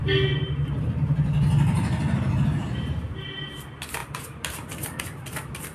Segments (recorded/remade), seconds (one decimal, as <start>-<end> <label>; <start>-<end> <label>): 0.0-5.7 recorded